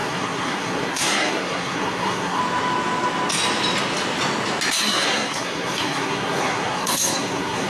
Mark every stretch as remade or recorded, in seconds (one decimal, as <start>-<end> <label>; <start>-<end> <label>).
0.0-2.4 remade; 2.4-4.8 recorded; 4.8-7.7 remade

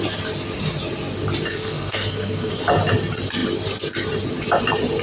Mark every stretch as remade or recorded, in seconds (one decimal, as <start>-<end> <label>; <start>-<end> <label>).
0.0-1.5 recorded; 1.5-2.5 remade; 2.5-5.0 recorded

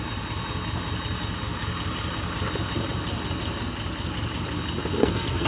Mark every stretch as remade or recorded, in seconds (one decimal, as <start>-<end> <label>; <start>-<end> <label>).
0.0-5.0 recorded; 5.0-5.5 remade

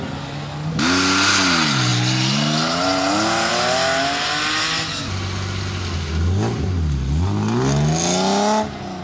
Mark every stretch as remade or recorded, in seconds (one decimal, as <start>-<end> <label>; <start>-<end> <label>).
0.0-9.0 recorded

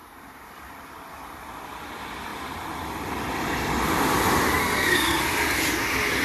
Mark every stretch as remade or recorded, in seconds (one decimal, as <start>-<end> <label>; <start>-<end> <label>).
0.0-4.6 recorded; 4.6-5.2 remade; 5.2-6.2 recorded

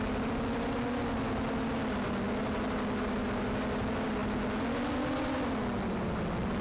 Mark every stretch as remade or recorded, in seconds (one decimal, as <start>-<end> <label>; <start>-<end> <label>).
0.0-6.6 recorded

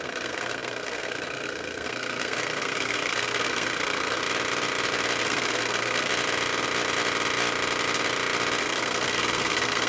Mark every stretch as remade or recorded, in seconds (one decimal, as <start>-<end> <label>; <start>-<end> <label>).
0.0-4.2 remade; 4.2-5.2 recorded; 5.2-6.1 remade; 6.1-8.6 recorded; 8.6-9.9 remade

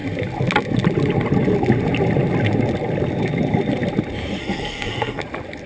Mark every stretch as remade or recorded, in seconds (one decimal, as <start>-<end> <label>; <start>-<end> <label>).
0.0-4.4 recorded; 4.4-5.2 remade; 5.2-5.7 recorded